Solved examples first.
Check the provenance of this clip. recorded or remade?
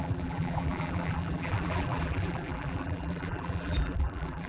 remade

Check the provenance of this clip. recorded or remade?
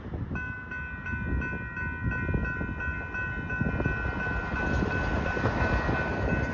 recorded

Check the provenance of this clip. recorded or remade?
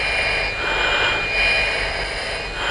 recorded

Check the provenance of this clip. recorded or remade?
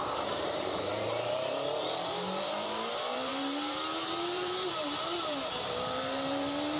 remade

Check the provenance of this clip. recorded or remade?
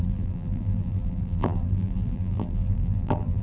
remade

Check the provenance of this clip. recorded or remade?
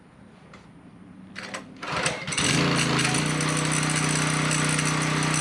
recorded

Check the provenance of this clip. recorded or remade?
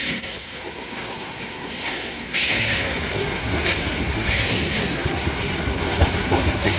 remade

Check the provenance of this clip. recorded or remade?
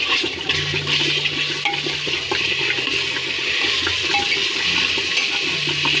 recorded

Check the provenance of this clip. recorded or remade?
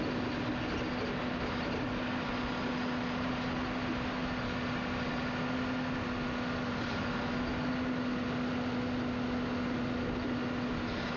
recorded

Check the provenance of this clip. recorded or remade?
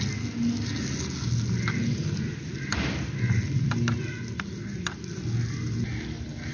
recorded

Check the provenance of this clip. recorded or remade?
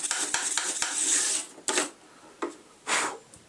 recorded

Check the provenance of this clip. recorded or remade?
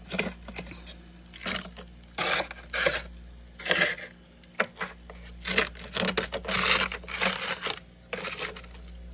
recorded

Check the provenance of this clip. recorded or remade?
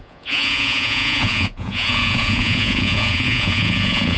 remade